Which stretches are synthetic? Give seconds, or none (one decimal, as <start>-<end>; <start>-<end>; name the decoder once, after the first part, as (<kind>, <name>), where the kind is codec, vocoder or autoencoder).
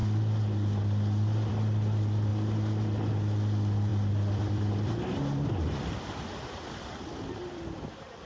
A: 1.5-2.3 (vocoder, BigVGAN v2); 3.1-8.3